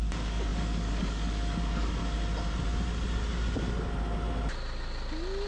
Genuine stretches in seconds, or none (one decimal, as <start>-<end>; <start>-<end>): 2.0-5.5

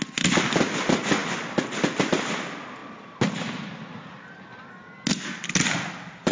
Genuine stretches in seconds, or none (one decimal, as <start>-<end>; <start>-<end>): 0.0-6.3

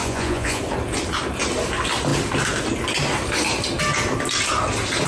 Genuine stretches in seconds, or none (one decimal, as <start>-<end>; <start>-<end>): 0.6-5.1

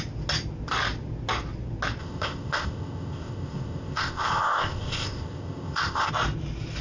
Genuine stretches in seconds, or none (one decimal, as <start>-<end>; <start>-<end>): 0.0-2.0; 6.1-6.8

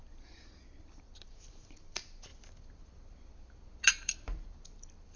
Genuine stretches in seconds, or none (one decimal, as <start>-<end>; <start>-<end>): none

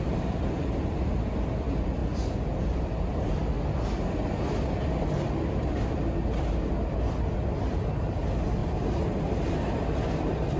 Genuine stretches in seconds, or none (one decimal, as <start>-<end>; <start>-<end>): 0.0-10.6

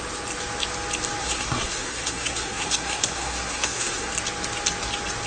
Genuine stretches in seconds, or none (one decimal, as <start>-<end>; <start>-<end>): 0.0-1.2; 4.1-5.3